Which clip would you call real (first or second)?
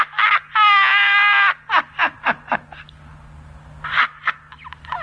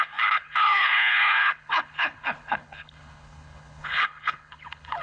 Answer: first